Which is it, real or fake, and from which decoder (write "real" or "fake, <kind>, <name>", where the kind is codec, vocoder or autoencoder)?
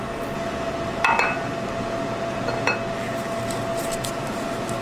real